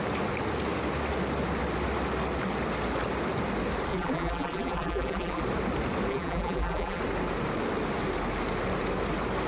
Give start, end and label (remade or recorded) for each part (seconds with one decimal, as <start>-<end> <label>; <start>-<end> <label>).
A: 0.0-3.9 recorded; 3.9-5.4 remade; 5.4-6.1 recorded; 6.1-7.0 remade; 7.0-9.5 recorded